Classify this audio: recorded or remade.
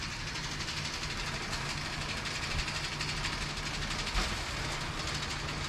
recorded